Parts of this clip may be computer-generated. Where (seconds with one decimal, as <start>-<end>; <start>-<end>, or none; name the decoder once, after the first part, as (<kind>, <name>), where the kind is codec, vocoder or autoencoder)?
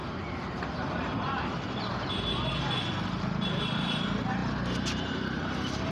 0.0-2.5 (vocoder, BigVGAN v2); 3.2-5.9